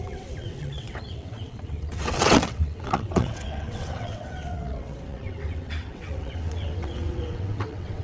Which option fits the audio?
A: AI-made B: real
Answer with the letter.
A